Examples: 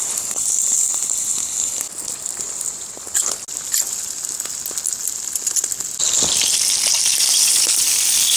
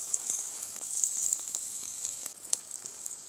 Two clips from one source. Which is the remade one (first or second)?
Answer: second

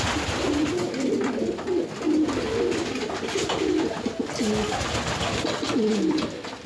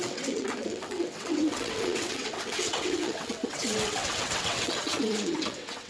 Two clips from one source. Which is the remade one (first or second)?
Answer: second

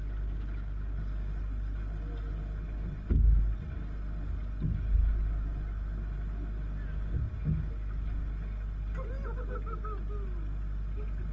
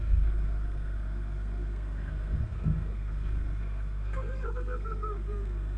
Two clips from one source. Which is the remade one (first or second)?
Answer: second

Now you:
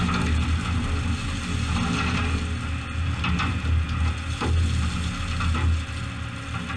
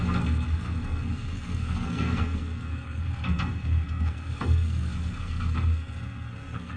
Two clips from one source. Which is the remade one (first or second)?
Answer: second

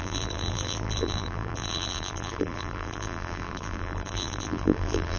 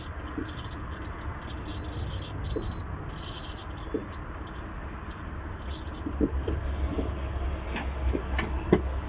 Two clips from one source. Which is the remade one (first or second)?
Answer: first